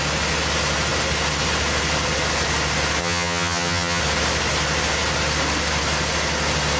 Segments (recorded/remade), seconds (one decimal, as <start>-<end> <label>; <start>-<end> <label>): 0.0-3.0 recorded; 3.0-4.0 remade; 4.0-6.8 recorded